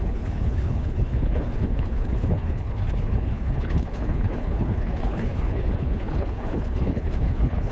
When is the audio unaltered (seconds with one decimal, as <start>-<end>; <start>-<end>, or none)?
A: none